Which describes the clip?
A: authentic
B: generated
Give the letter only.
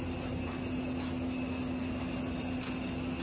A